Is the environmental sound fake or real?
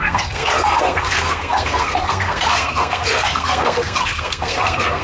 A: fake